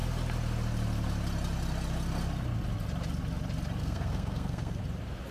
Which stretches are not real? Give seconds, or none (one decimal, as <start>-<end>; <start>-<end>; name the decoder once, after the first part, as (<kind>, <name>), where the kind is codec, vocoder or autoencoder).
3.8-4.8 (codec, SNAC)